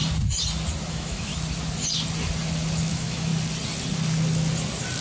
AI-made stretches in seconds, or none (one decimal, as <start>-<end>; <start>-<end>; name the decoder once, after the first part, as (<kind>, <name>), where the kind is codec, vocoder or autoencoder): 0.9-1.3 (autoencoder, DAC-VAE); 2.8-3.3